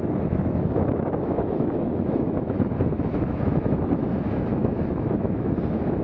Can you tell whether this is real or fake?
fake